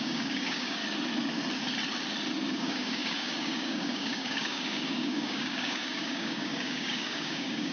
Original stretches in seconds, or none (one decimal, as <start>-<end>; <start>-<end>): 0.8-2.5